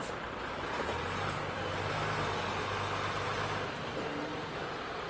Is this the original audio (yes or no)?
yes